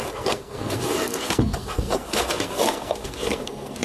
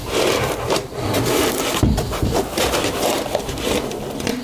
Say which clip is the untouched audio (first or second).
second